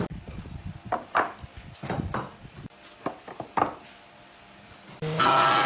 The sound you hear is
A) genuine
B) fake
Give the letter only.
A